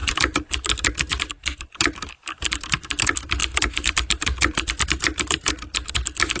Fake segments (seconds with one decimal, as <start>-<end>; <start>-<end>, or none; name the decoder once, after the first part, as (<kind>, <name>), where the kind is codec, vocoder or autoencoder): 0.0-0.7 (vocoder, BigVGAN v2); 1.1-1.7; 3.4-5.5